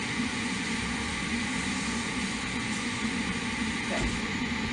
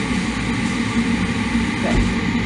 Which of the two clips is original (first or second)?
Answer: second